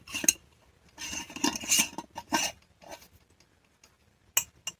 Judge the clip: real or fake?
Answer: real